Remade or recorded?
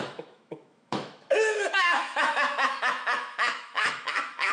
remade